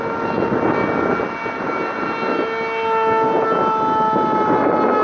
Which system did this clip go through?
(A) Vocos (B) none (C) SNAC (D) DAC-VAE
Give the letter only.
B